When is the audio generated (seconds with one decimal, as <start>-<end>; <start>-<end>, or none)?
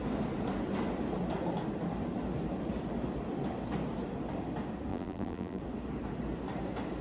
4.9-5.6